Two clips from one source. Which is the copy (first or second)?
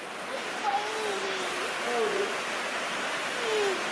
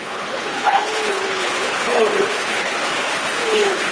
second